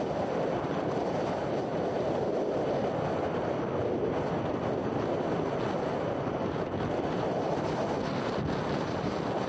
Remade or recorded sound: recorded